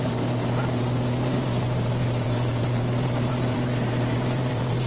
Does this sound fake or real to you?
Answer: fake